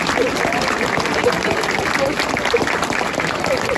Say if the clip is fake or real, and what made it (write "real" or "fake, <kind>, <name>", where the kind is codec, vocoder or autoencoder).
real